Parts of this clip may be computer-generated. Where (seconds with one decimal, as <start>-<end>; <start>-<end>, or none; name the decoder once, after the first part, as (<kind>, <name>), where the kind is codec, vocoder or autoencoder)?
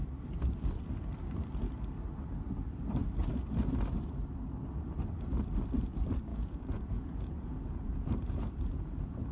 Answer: 6.3-9.3 (vocoder, Vocos)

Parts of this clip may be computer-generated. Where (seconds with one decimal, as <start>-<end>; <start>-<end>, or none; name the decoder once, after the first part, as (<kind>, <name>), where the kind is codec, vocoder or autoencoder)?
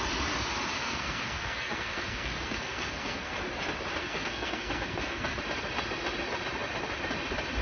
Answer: 0.8-3.4 (codec, SNAC); 4.0-5.4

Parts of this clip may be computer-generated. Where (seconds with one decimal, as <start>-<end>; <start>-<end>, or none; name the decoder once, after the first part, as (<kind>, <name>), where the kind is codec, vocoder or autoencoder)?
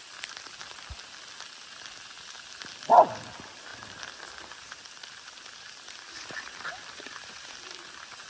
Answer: 3.7-7.5 (vocoder, BigVGAN v2)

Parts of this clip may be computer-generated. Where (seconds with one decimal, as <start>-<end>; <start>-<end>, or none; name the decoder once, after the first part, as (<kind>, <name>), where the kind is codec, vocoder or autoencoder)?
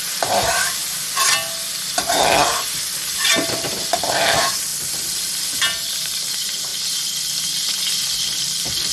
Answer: 0.0-0.8 (vocoder, BigVGAN v2); 3.3-4.7; 5.9-6.7; 8.4-8.9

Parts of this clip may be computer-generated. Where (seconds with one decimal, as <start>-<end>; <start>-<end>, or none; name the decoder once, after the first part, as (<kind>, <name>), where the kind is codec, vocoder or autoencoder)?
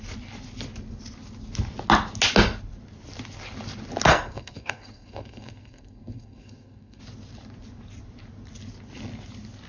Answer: 4.1-7.0 (codec, SNAC)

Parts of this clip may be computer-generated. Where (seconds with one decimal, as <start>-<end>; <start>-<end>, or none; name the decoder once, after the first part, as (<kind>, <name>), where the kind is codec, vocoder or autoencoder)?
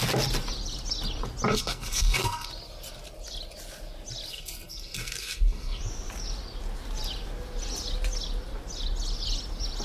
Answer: 1.5-2.5 (codec, SNAC); 4.3-5.8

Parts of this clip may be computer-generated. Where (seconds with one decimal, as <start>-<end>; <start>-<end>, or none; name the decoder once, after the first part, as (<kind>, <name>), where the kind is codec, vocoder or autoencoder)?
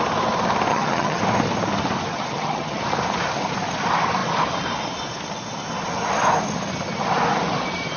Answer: 0.7-1.2 (vocoder, HiFi-GAN); 2.1-2.8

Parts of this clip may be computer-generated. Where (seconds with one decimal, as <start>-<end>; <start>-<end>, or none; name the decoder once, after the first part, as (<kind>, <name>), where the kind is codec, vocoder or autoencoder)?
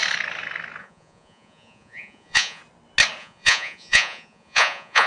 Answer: 0.8-2.6 (vocoder, Vocos); 3.2-5.1